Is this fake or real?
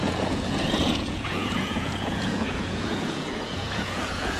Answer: fake